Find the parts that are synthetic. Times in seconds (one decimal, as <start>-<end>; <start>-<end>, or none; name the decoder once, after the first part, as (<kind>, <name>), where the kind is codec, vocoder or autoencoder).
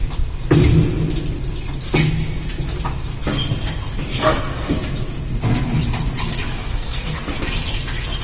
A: 4.1-4.7 (codec, SNAC); 6.7-7.3